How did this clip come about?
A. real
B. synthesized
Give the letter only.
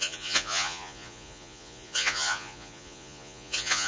B